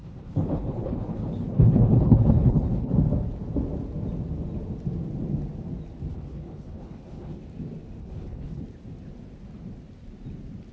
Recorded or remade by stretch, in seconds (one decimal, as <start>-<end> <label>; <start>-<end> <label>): 0.0-2.9 remade; 2.9-6.1 recorded; 6.1-7.4 remade; 7.4-8.0 recorded; 8.0-8.6 remade; 8.6-10.7 recorded